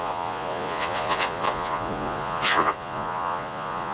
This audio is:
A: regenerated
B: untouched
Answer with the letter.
A